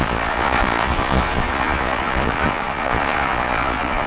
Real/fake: fake